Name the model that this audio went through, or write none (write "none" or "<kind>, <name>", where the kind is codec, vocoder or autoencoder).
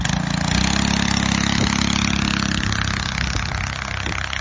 none